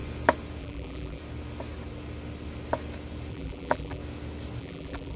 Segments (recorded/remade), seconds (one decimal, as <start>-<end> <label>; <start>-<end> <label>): 0.0-0.6 recorded; 0.6-1.2 remade; 1.2-3.3 recorded; 3.3-4.0 remade; 4.0-4.6 recorded; 4.6-5.2 remade